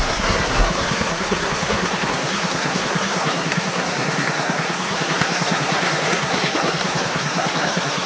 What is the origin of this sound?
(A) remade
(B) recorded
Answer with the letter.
A